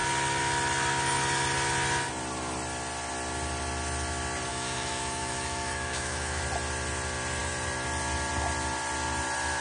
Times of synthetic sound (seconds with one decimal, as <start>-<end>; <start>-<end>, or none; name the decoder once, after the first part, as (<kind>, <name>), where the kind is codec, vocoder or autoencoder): 4.5-6.4 (autoencoder, DAC-VAE)